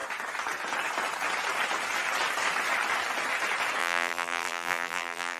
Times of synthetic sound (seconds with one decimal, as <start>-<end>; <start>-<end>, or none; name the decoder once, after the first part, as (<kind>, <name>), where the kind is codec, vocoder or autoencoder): 3.8-5.4 (vocoder, BigVGAN v2)